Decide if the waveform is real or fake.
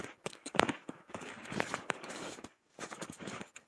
fake